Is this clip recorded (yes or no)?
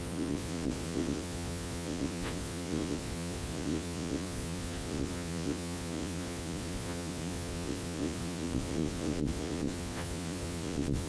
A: no